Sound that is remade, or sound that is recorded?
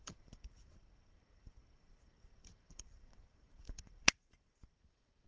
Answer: remade